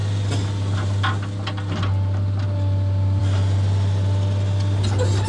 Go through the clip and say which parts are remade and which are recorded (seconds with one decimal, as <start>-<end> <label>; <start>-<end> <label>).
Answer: 0.0-5.3 recorded